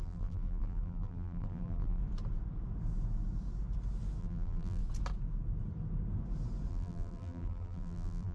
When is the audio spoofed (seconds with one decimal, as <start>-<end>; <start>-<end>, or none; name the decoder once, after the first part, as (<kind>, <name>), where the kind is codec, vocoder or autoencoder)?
0.0-2.0 (vocoder, BigVGAN v2); 4.2-4.8; 6.7-8.3